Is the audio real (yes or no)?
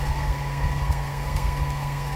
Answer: no